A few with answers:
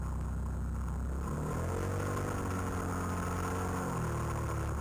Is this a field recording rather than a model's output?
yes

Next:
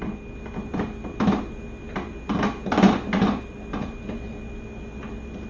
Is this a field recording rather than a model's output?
yes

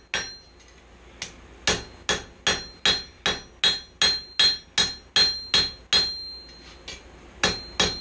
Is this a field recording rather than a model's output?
yes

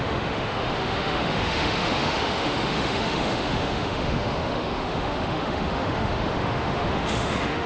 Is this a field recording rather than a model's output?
no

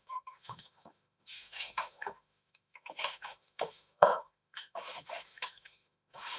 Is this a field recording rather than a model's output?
no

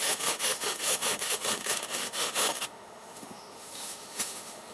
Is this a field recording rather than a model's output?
no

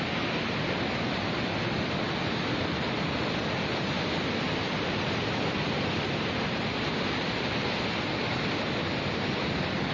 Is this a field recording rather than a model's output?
yes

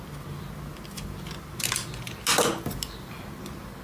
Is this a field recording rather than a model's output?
yes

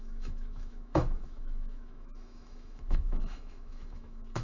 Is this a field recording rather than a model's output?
no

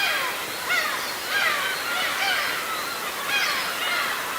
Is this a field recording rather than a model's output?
yes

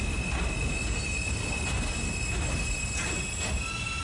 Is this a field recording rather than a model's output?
yes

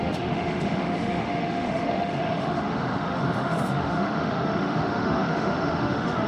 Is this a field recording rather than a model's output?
no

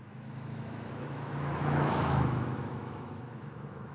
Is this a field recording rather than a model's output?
no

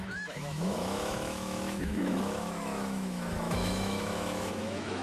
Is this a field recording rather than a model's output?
no